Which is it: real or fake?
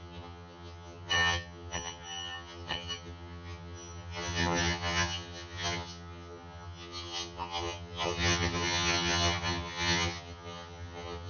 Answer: fake